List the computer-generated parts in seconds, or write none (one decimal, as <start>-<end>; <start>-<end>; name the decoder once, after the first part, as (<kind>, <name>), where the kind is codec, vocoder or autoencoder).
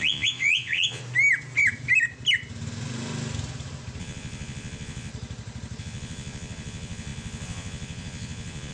0.0-1.0 (vocoder, Vocos); 4.0-5.1; 5.8-8.7